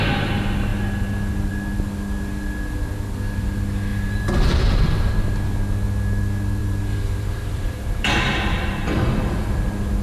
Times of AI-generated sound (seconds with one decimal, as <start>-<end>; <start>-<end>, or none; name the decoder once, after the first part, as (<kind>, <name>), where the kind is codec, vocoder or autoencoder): 3.9-5.1 (vocoder, BigVGAN v2); 6.6-8.8